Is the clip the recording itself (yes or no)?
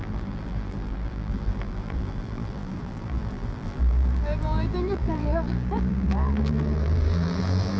no